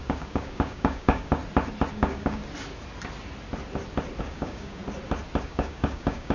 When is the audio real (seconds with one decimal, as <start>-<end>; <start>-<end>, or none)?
1.4-1.9; 2.4-4.2; 4.8-5.4